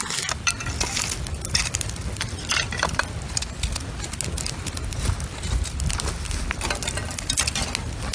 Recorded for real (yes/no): yes